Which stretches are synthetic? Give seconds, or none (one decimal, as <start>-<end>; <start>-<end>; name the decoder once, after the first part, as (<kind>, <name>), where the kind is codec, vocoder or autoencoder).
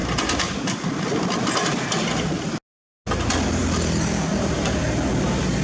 none